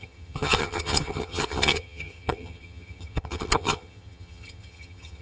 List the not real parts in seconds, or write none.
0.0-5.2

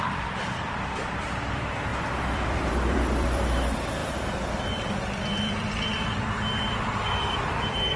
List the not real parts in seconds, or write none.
0.0-8.0

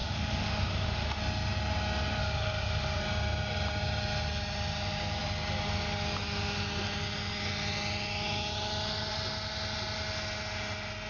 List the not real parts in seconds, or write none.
0.0-1.2; 2.2-3.0

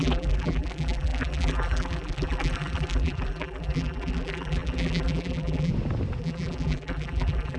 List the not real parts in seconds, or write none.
0.0-5.7; 6.2-7.6

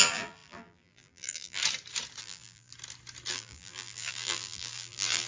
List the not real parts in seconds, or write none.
0.0-1.6; 2.2-2.7; 3.3-5.3

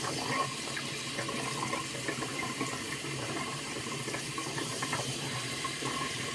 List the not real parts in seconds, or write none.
2.3-6.3